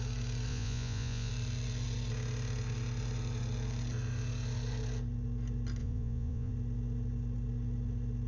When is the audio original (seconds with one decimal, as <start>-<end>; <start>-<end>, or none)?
0.0-0.5; 1.3-5.8; 6.5-8.3